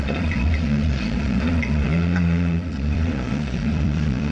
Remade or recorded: remade